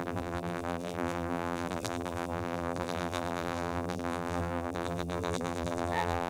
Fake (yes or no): yes